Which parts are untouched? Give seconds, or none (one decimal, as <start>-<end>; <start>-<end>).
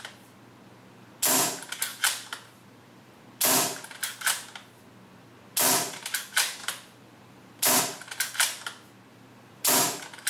0.0-1.9; 3.2-6.6; 7.8-9.1; 9.8-10.3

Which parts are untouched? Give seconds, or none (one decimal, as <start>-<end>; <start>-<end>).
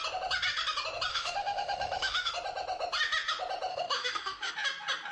0.0-1.1; 2.3-3.7; 4.5-5.1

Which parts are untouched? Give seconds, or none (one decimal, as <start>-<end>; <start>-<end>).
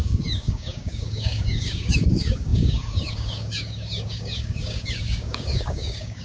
none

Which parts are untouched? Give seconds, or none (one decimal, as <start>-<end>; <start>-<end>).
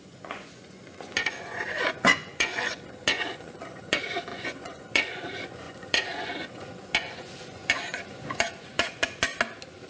9.3-9.9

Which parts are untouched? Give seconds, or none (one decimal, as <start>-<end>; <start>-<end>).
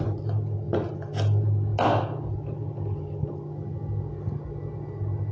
0.0-5.3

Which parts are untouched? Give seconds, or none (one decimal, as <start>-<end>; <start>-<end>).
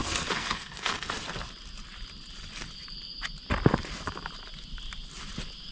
1.1-5.7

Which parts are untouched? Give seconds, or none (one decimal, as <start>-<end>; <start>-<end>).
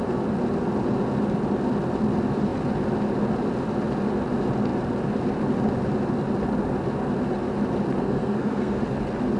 0.0-8.0; 8.8-9.4